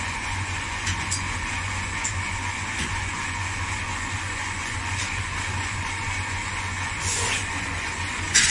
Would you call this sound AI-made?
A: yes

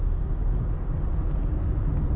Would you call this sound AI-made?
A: no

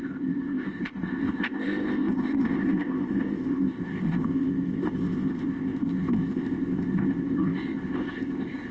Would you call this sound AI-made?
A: yes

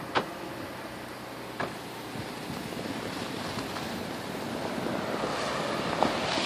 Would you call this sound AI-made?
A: no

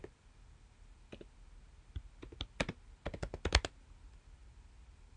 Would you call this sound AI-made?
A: no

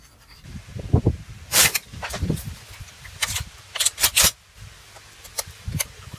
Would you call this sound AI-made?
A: yes